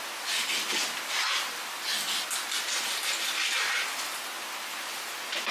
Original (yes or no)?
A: yes